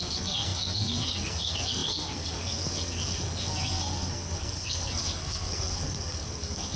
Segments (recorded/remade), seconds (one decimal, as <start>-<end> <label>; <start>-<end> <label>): 0.0-6.8 remade

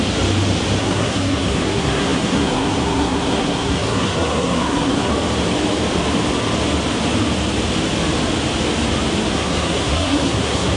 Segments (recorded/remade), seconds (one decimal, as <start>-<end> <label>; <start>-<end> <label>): 0.0-0.8 recorded; 0.8-5.1 remade; 5.1-9.3 recorded; 9.3-10.8 remade